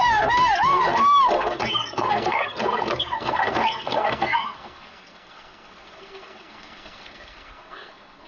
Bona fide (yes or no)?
no